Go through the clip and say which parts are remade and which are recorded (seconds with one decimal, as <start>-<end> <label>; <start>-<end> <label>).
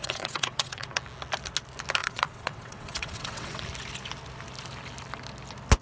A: 0.0-1.0 remade; 1.0-2.0 recorded; 2.0-3.6 remade; 3.6-5.8 recorded